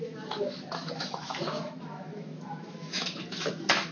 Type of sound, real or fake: fake